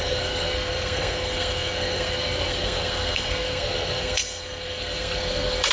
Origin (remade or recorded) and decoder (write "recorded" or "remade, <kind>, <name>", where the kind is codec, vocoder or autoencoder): remade, codec, SNAC